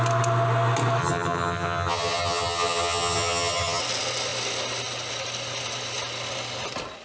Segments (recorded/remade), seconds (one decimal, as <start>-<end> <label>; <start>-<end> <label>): 0.0-1.0 recorded; 1.0-3.8 remade; 3.8-7.0 recorded